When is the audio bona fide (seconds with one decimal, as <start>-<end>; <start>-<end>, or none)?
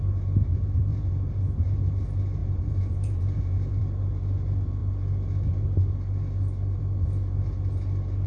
0.0-0.9; 1.5-2.4; 3.8-8.3